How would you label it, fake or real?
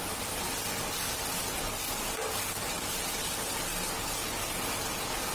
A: real